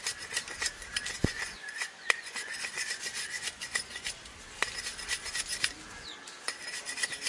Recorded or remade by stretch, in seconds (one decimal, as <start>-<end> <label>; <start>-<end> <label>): 0.0-1.2 recorded; 1.2-4.1 remade; 4.1-7.3 recorded